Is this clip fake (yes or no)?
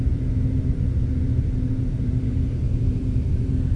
yes